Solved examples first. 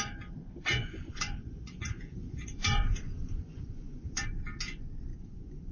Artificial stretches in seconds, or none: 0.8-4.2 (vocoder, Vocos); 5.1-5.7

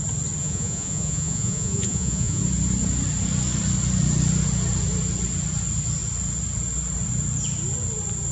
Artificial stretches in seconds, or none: 0.4-2.4 (vocoder, Vocos)

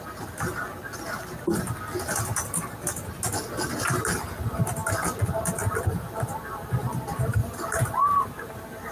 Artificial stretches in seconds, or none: 7.4-8.9 (vocoder, BigVGAN v2)

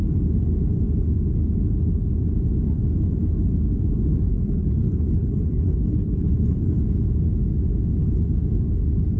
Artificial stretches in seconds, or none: 4.3-6.8 (codec, HILCodec)